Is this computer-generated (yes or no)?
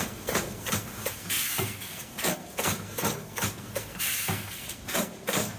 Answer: yes